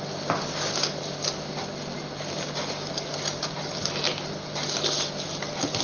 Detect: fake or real real